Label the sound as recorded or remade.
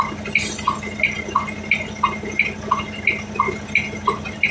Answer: recorded